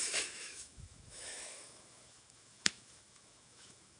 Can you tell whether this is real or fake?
fake